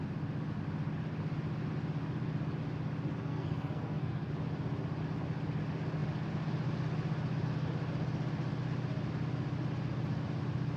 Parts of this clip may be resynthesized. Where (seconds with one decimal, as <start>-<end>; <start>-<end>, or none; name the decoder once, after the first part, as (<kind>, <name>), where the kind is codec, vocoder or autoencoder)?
3.2-4.3 (codec, SNAC)